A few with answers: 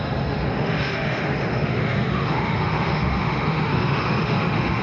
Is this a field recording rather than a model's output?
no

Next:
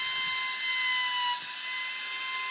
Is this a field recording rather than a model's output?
yes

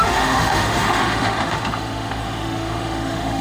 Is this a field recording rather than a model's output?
no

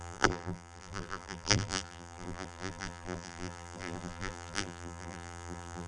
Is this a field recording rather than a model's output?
no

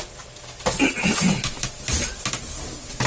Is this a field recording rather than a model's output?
yes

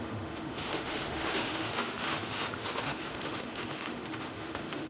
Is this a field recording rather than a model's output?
no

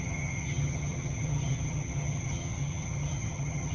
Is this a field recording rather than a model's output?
no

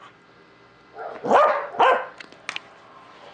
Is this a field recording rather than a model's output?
yes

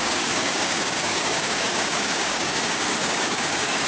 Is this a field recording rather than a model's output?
no